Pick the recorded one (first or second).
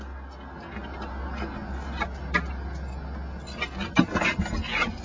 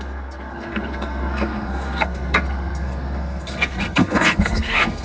first